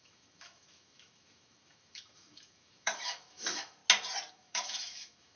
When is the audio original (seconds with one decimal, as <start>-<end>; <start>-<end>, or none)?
3.8-4.3